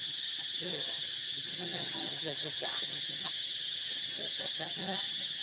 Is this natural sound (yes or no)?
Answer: no